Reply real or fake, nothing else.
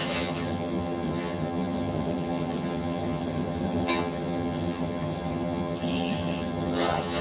fake